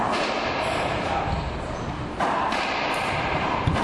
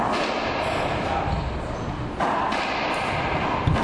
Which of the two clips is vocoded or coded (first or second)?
first